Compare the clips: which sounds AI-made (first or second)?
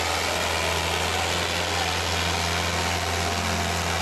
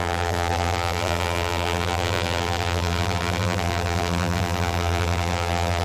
second